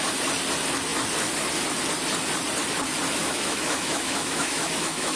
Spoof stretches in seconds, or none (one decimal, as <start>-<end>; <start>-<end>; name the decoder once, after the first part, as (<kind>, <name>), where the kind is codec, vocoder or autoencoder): 3.2-5.2 (autoencoder, DAC-VAE)